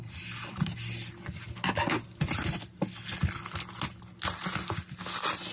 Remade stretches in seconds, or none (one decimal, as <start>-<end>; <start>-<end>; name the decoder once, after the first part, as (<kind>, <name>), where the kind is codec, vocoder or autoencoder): none